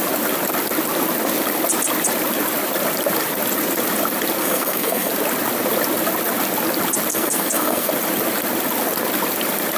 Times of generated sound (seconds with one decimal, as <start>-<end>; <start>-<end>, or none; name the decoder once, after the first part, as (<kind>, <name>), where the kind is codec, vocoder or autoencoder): 4.4-5.1 (codec, SNAC); 7.1-7.9